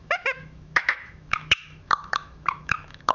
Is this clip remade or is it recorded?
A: remade